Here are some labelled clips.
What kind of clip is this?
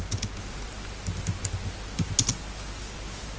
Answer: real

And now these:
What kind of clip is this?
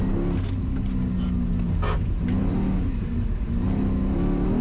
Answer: real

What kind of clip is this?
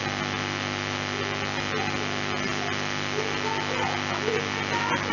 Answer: real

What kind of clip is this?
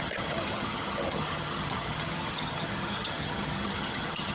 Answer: fake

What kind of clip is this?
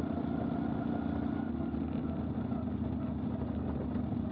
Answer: real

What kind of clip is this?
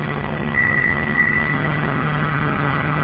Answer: fake